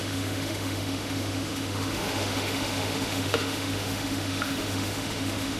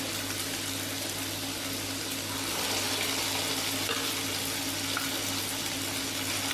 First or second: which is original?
second